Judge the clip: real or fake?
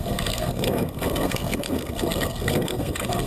fake